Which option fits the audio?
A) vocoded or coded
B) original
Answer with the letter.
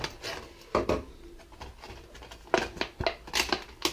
B